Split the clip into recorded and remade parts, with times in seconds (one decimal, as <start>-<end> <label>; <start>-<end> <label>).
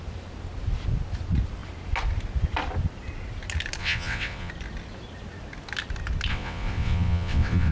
0.0-3.8 recorded; 3.8-4.5 remade; 4.5-6.3 recorded; 6.3-7.7 remade